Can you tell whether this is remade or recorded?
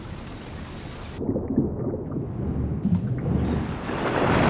recorded